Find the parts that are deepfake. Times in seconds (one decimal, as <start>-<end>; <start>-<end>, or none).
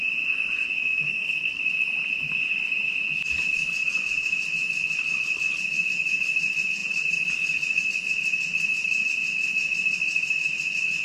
0.8-1.6